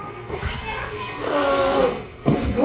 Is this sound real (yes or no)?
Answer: no